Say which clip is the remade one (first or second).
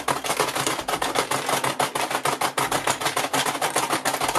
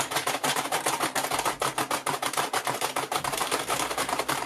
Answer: second